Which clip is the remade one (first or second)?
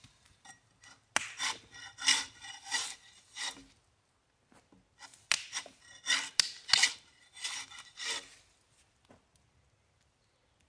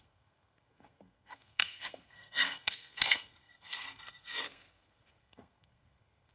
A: second